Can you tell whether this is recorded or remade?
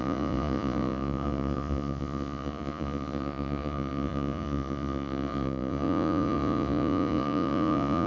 remade